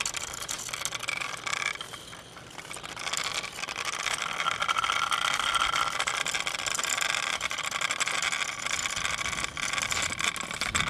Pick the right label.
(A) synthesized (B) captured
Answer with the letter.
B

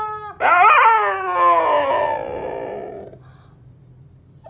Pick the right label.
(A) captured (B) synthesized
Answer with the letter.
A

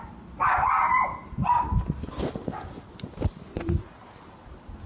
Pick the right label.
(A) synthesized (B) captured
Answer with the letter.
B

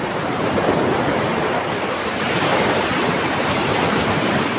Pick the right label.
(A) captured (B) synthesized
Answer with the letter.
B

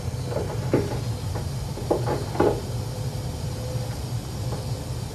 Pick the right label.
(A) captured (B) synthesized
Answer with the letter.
A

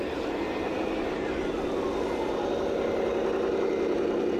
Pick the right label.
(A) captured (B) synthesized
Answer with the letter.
A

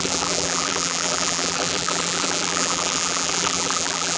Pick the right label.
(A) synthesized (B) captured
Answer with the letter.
A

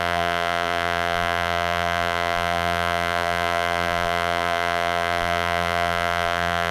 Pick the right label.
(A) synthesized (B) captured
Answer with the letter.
A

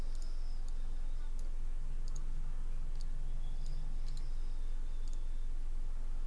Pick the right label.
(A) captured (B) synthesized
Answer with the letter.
A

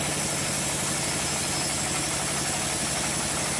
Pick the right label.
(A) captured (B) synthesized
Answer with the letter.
A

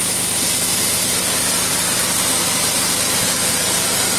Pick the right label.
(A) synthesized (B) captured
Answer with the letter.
B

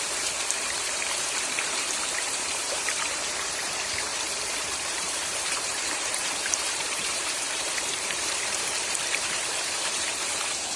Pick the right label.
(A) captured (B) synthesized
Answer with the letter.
B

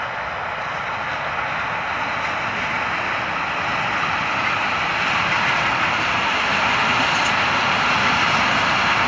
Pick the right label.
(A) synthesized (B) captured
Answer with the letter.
B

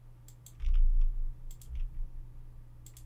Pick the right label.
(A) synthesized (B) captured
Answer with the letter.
B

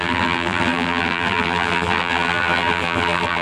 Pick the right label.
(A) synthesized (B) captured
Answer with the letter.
A